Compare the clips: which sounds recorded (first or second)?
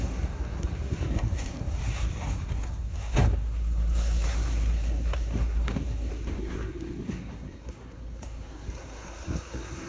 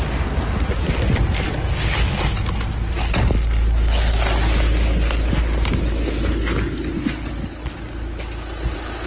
second